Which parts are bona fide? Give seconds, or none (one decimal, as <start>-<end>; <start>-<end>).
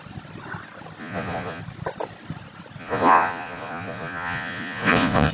0.0-1.0; 1.6-2.8